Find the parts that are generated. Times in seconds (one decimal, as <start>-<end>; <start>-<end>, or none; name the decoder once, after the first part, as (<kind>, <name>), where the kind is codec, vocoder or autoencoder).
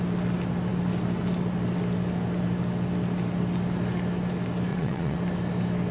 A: 4.7-5.2 (vocoder, WaveNeXt)